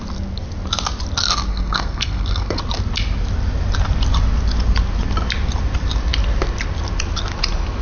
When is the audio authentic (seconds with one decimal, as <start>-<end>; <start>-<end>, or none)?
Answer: 0.0-1.5; 2.6-7.8